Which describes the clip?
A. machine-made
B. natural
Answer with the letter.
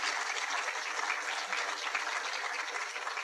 B